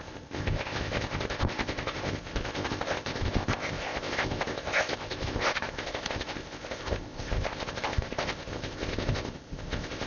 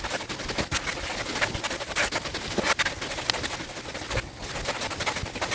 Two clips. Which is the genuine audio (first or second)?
second